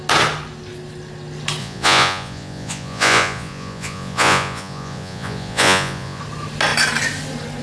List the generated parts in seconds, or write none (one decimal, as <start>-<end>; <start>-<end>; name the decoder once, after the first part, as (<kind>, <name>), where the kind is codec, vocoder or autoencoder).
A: 1.6-6.2 (vocoder, Vocos)